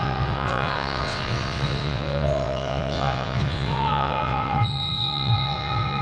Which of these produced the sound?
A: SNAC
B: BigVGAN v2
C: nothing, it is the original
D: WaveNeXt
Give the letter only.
D